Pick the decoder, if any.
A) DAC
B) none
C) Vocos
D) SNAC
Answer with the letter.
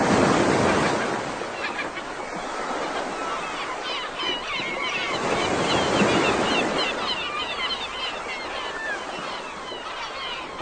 B